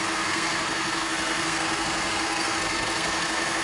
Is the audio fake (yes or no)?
yes